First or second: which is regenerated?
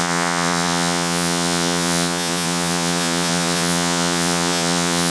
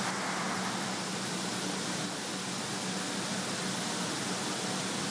first